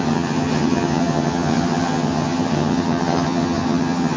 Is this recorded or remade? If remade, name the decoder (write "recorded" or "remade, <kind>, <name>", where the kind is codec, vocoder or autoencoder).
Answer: remade, vocoder, HiFi-GAN